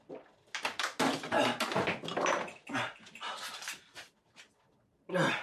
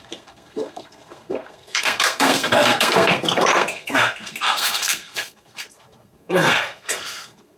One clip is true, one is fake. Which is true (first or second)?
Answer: first